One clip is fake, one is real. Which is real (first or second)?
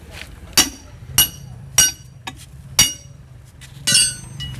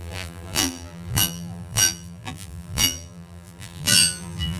first